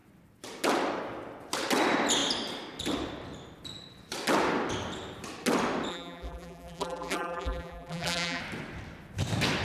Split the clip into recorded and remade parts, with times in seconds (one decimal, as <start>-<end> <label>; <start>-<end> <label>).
0.0-5.9 recorded; 5.9-8.4 remade; 8.4-9.6 recorded